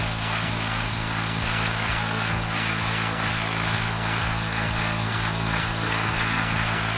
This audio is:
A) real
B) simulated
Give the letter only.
B